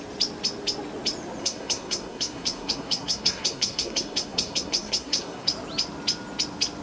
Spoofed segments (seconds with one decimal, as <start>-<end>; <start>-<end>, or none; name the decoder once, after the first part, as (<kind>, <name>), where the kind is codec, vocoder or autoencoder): 1.4-5.5 (codec, SNAC)